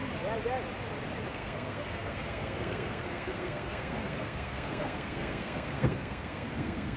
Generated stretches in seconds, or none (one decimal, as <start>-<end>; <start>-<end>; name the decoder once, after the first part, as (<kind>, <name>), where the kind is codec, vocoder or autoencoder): 1.3-7.0 (codec, SNAC)